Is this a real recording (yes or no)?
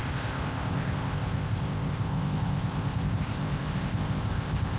no